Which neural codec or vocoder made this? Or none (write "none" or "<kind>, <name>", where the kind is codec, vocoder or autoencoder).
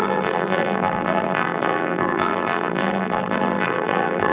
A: vocoder, BigVGAN v2